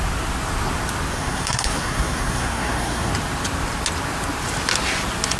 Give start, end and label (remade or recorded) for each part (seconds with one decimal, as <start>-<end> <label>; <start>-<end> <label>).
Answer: 0.0-1.1 recorded; 1.1-3.1 remade; 3.1-5.4 recorded